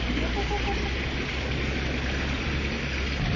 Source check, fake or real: real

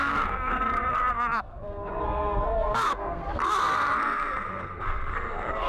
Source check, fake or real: fake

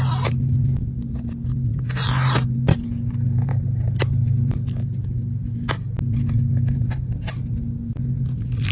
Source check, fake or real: real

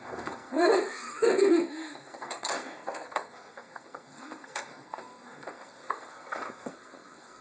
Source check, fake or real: fake